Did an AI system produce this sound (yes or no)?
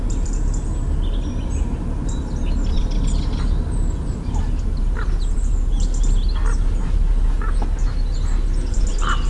no